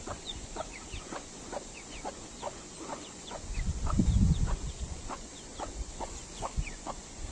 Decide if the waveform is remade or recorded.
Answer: remade